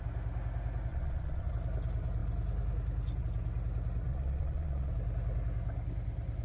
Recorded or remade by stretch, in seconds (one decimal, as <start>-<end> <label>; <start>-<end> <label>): 0.0-0.9 recorded; 0.9-1.5 remade; 1.5-4.1 recorded; 4.1-4.9 remade; 4.9-6.4 recorded